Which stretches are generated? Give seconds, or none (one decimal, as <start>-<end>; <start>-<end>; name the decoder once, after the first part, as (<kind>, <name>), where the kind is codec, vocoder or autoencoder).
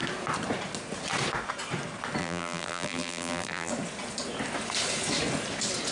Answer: 2.2-3.7 (vocoder, BigVGAN v2)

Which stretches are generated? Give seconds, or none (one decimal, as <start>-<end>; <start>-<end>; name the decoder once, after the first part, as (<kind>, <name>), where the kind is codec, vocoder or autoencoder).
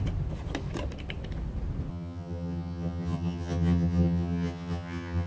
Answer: 1.9-5.3 (vocoder, HiFi-GAN)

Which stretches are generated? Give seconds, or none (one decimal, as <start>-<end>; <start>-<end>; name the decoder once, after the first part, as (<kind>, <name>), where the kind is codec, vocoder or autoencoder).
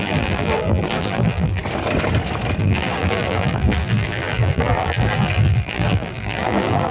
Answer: 0.0-1.6 (vocoder, BigVGAN v2); 2.6-6.9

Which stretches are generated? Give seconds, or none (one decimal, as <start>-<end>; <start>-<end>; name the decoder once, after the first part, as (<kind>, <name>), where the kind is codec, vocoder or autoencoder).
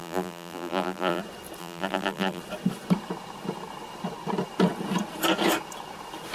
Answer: 0.0-1.2 (vocoder, BigVGAN v2); 1.6-2.4